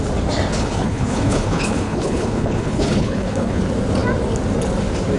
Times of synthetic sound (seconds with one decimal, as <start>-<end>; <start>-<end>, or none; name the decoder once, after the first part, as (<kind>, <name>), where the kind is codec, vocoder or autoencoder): 0.5-3.6 (codec, HILCodec)